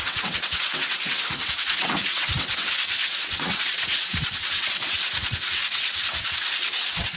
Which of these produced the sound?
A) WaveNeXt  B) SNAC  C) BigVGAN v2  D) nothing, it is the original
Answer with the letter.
A